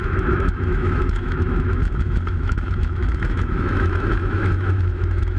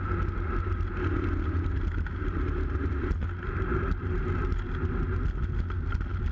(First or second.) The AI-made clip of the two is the first